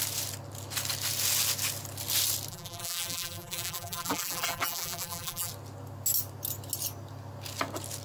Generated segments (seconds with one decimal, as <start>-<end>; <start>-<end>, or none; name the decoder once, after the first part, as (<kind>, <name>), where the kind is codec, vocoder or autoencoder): 2.5-5.5 (vocoder, BigVGAN v2)